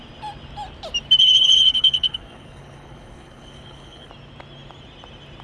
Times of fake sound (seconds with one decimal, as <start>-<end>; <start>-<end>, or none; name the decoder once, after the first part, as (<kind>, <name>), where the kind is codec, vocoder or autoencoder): 1.2-4.1 (codec, HILCodec)